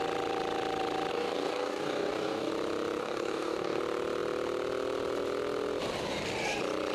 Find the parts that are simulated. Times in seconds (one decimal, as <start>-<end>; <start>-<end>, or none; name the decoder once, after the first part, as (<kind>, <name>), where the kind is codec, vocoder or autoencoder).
1.1-2.5 (codec, DAC); 3.0-3.8